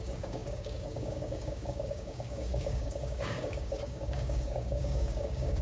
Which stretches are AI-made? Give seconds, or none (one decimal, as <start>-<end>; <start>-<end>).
0.0-5.6